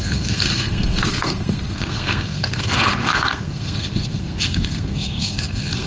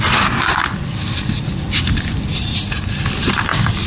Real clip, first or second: second